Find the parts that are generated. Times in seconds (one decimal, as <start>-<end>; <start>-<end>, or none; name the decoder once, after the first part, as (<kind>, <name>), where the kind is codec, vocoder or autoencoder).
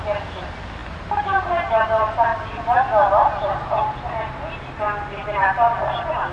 none